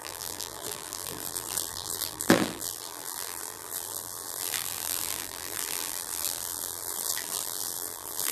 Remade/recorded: remade